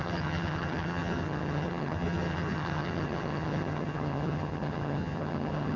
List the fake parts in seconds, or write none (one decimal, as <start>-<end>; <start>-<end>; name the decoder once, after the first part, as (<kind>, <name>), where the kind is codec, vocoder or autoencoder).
0.0-5.8 (vocoder, HiFi-GAN)